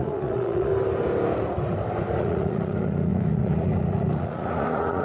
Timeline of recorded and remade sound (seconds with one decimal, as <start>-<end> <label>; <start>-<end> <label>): 0.0-0.7 remade; 0.7-2.2 recorded; 2.2-5.0 remade

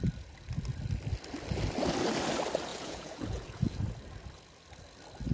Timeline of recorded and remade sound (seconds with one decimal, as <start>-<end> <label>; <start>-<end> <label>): 0.0-2.7 recorded; 2.7-3.8 remade; 3.8-5.3 recorded

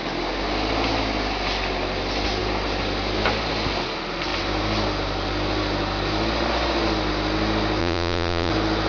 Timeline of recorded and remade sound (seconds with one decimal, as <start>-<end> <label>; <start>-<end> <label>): 0.0-7.8 recorded; 7.8-8.5 remade; 8.5-8.9 recorded

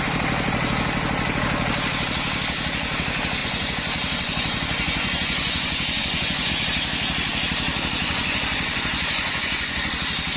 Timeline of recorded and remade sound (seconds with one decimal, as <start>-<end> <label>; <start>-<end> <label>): 0.0-3.4 recorded; 3.4-6.5 remade; 6.5-8.0 recorded; 8.0-9.9 remade; 9.9-10.4 recorded